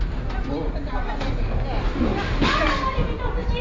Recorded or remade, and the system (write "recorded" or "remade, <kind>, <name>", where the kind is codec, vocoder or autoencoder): recorded